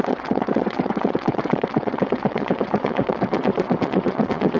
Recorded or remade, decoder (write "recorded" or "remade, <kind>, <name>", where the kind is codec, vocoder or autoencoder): remade, vocoder, WaveNeXt